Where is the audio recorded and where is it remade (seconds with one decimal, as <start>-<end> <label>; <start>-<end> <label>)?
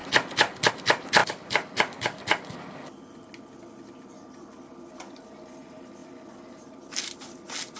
0.0-1.2 recorded; 1.2-2.5 remade; 2.5-6.0 recorded; 6.0-6.9 remade; 6.9-7.8 recorded